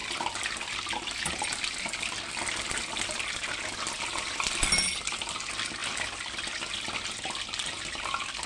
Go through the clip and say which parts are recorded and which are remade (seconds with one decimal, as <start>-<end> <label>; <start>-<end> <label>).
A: 0.0-8.5 recorded